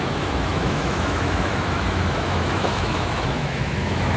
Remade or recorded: remade